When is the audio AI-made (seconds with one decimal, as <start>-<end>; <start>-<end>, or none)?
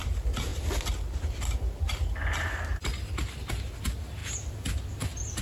none